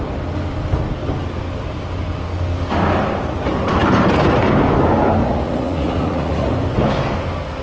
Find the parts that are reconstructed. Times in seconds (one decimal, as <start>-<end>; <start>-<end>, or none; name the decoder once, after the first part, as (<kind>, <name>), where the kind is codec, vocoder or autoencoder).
5.2-6.5 (vocoder, Vocos)